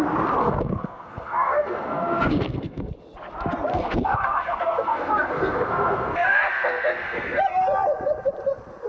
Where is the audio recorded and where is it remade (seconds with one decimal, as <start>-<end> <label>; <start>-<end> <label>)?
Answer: 0.0-0.4 recorded; 0.4-2.9 remade; 2.9-3.7 recorded; 3.7-7.4 remade; 7.4-8.9 recorded